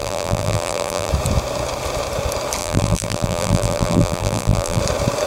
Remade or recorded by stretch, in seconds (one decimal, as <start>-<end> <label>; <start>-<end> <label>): 0.0-1.1 remade; 1.1-2.6 recorded; 2.6-4.8 remade; 4.8-5.3 recorded